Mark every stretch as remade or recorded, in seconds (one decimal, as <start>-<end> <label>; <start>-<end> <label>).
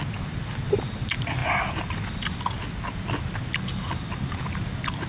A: 0.0-5.1 recorded